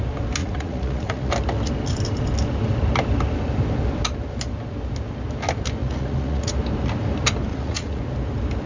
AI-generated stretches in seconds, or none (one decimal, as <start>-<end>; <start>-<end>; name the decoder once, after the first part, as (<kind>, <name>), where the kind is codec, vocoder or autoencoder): 0.4-1.3 (vocoder, Vocos); 5.8-6.5; 7.5-8.0

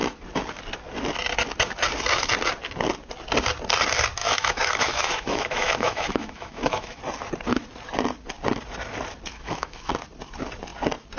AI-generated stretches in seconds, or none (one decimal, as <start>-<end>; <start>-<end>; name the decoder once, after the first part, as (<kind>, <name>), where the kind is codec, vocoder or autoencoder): 4.2-7.0 (autoencoder, DAC-VAE); 9.3-9.9

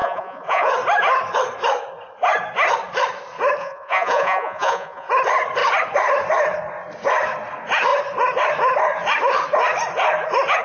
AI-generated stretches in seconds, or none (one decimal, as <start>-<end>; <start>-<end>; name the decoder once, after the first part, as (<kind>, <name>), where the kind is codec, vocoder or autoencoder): 0.0-0.7 (vocoder, Vocos); 3.6-5.1

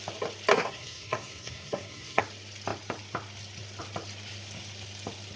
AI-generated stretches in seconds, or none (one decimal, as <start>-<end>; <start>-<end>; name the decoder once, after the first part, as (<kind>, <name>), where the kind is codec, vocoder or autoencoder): 0.5-2.2 (codec, SNAC)

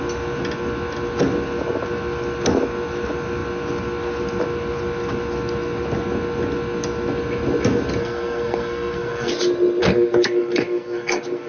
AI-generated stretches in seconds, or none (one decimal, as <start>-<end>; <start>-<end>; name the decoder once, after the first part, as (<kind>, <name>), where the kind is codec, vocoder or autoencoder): 8.0-9.3 (codec, SNAC); 9.8-11.5

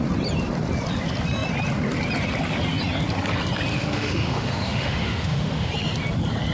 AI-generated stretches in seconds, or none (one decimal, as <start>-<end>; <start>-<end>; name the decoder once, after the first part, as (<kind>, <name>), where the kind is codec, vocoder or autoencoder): 3.7-5.7 (autoencoder, DAC-VAE)